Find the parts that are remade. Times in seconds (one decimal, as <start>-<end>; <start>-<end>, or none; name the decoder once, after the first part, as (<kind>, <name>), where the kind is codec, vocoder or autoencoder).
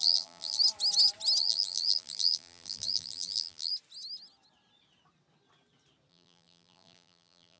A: 0.0-0.6 (vocoder, BigVGAN v2); 1.4-3.7; 6.1-7.6